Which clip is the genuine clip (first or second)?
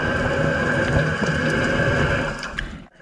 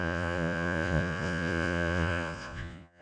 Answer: first